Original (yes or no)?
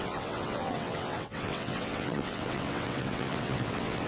no